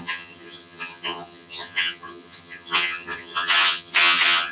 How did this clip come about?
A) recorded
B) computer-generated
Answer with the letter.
B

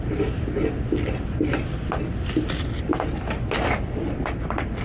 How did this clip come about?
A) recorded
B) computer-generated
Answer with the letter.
A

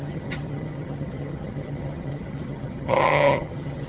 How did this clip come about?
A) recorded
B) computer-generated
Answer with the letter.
B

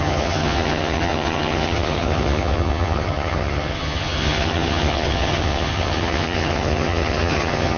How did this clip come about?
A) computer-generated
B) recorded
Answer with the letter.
A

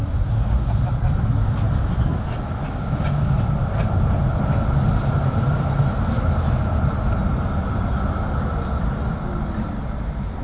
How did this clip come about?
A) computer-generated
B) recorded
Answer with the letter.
B